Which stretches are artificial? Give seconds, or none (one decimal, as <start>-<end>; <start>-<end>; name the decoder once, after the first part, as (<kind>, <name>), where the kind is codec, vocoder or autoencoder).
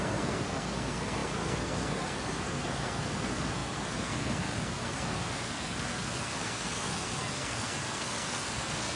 0.0-9.0 (codec, SNAC)